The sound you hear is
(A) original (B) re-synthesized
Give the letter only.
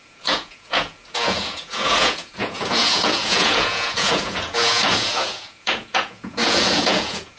B